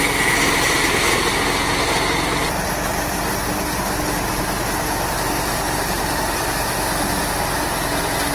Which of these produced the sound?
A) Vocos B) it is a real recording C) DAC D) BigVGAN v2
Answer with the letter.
B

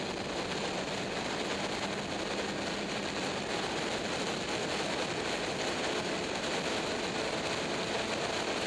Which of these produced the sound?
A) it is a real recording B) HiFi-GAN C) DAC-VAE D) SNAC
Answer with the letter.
A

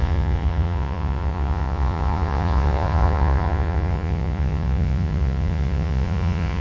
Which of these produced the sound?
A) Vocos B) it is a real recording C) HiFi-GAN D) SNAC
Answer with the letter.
A